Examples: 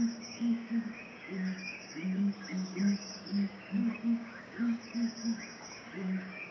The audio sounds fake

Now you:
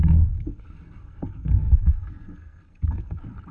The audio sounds fake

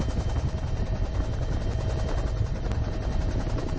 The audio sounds real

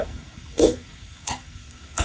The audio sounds fake